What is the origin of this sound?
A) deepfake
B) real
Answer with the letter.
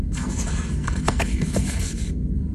A